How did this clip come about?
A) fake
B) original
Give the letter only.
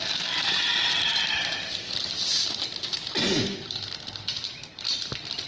B